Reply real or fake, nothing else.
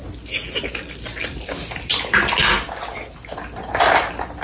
real